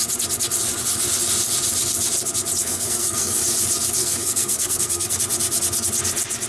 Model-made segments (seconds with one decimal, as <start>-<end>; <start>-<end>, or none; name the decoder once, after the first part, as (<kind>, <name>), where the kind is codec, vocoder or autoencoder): 2.6-3.4 (codec, SNAC); 4.0-5.2